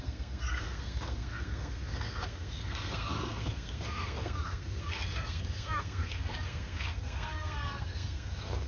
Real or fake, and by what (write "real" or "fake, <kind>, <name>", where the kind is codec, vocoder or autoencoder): fake, codec, SNAC